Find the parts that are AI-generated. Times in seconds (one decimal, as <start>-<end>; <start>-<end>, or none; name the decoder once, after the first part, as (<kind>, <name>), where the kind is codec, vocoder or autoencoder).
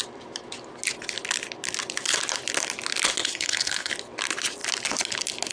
3.2-3.9 (codec, HILCodec)